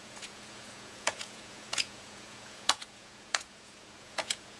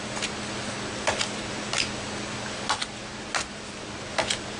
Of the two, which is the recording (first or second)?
second